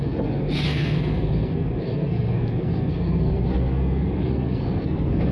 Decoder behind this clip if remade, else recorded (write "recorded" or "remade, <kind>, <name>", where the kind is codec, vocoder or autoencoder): remade, codec, SNAC